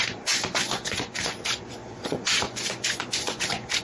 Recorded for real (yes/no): no